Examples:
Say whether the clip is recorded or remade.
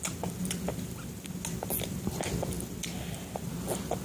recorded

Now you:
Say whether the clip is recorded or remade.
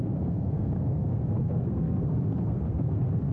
remade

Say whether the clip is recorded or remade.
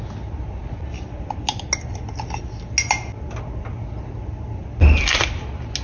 recorded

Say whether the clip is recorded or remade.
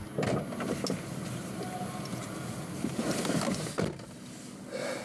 recorded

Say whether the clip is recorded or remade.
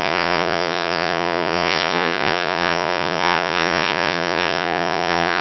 remade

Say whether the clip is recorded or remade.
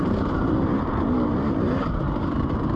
remade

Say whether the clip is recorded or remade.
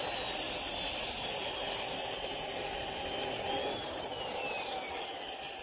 recorded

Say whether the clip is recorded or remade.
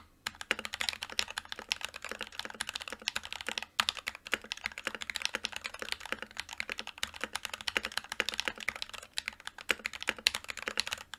recorded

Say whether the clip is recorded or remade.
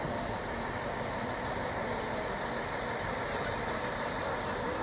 recorded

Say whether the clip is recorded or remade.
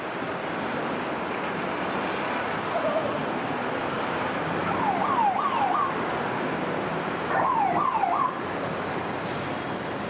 recorded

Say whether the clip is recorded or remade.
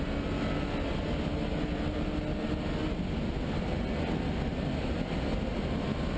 recorded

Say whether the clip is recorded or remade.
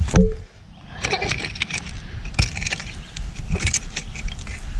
recorded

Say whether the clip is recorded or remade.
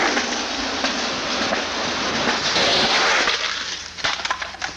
recorded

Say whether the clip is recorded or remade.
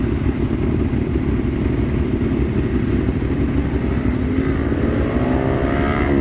recorded